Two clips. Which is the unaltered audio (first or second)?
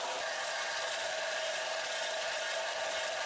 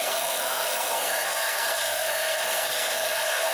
first